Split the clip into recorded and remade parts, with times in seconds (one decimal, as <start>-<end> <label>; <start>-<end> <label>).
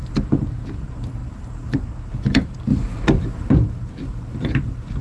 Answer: 0.0-5.0 recorded